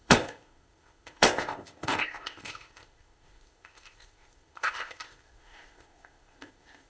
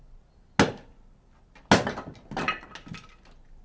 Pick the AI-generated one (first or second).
first